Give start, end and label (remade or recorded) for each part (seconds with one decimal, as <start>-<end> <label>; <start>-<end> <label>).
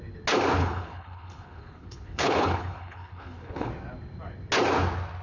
0.0-0.6 recorded; 0.6-3.7 remade; 3.7-5.2 recorded